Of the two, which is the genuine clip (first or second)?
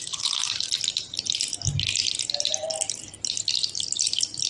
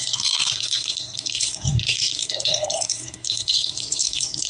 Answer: first